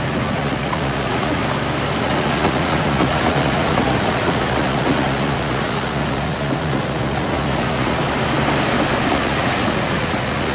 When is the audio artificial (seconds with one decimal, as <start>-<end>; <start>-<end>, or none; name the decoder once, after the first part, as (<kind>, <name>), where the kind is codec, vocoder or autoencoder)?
0.0-1.4 (vocoder, Vocos); 2.0-8.0; 9.1-10.5